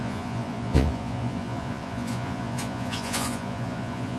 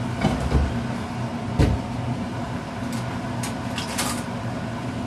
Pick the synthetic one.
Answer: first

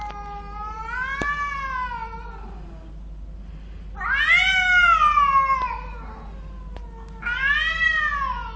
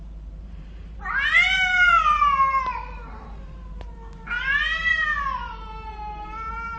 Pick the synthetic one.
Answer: second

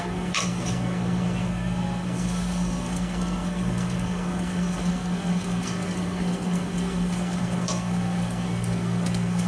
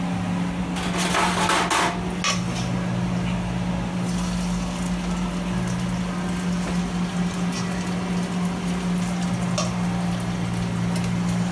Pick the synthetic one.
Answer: first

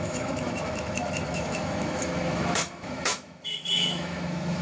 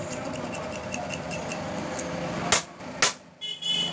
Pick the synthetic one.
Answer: first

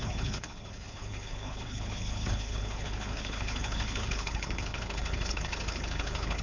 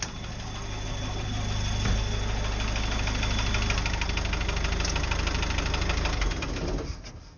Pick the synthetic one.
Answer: first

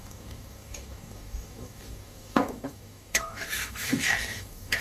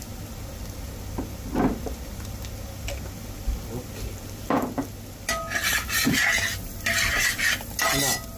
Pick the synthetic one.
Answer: first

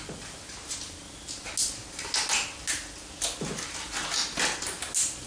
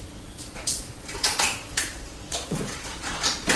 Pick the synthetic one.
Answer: second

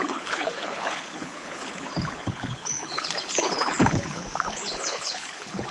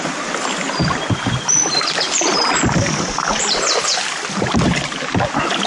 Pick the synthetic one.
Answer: first